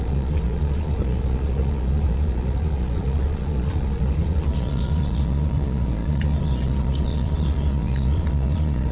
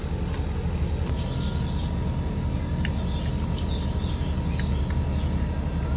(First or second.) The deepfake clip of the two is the first